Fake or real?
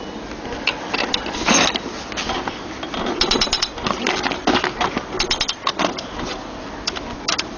real